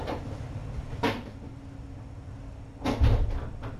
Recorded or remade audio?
recorded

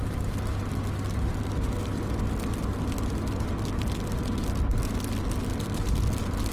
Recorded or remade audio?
recorded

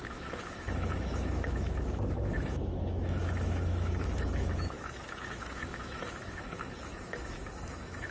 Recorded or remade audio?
remade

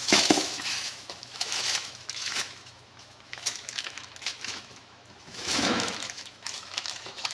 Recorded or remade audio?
remade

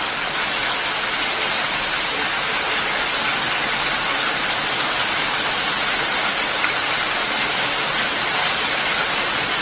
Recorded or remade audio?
recorded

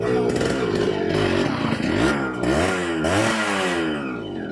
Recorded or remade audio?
recorded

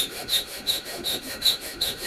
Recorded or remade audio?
remade